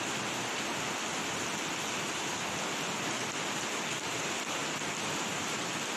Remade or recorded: recorded